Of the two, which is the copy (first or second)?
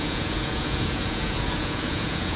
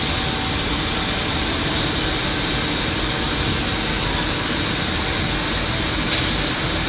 first